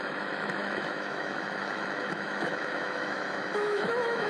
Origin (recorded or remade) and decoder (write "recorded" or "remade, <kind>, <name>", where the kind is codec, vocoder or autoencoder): remade, autoencoder, DAC-VAE